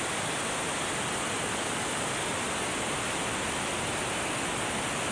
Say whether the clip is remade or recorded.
recorded